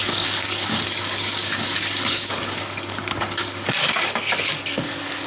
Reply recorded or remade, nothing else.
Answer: remade